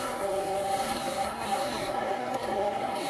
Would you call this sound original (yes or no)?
no